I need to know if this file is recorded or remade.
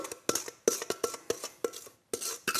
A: recorded